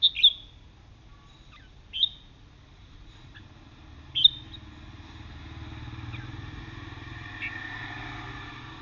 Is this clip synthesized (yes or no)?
no